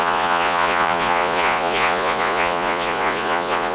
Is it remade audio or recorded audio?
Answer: remade